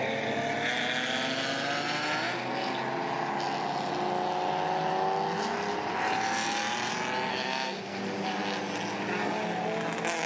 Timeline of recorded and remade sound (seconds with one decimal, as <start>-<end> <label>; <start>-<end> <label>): 0.0-7.3 recorded; 7.3-8.0 remade; 8.0-10.3 recorded